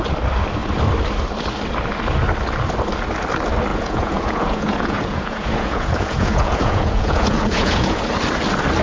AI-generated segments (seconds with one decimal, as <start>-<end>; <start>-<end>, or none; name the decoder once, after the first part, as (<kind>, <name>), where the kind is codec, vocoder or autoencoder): 3.7-8.0 (vocoder, Vocos)